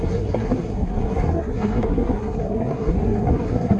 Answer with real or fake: fake